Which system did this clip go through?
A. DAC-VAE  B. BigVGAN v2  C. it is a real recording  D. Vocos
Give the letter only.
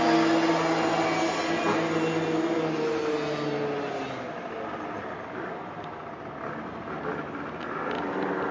C